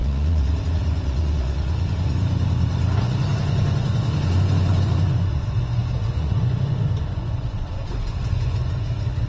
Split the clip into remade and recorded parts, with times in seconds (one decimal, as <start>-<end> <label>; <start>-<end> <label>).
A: 0.0-9.3 remade